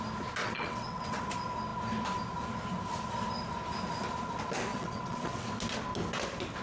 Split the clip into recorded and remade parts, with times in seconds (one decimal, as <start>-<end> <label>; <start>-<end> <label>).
0.0-0.4 recorded; 0.4-1.2 remade; 1.2-4.7 recorded; 4.7-5.5 remade; 5.5-6.6 recorded